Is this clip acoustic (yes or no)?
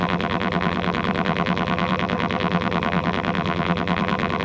no